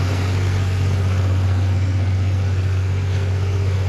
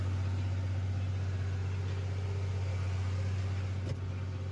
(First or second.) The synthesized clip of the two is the first